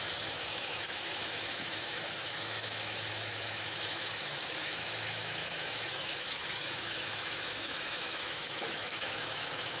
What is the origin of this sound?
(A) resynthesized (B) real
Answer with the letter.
A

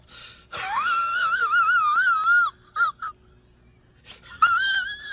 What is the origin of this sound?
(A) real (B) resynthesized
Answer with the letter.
A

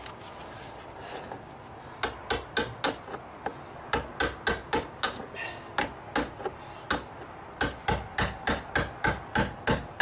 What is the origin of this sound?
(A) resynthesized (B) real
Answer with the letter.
B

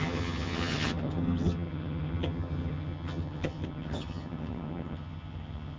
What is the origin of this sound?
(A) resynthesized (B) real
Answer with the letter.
A